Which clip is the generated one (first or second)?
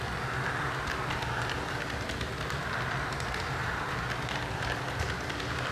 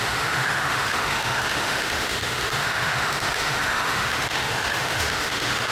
second